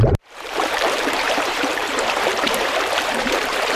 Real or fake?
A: fake